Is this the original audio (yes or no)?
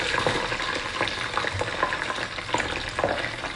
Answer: no